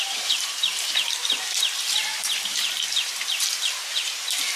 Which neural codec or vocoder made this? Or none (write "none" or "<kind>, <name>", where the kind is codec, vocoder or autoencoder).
vocoder, BigVGAN v2